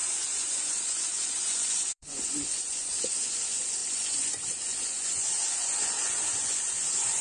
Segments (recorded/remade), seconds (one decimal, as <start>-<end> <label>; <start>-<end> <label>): 0.0-7.2 remade